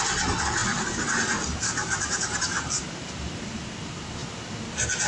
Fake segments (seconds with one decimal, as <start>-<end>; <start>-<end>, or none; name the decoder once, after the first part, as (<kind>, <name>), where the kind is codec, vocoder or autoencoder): 0.6-3.7 (vocoder, BigVGAN v2)